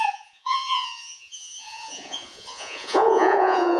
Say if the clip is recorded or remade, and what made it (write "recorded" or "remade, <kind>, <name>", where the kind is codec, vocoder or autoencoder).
remade, vocoder, Vocos